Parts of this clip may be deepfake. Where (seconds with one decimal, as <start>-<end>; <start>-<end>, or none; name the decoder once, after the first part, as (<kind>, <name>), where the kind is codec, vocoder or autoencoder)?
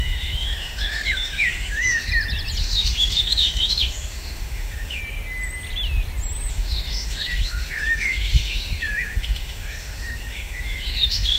0.0-2.1 (autoencoder, DAC-VAE); 2.6-5.0; 6.5-11.4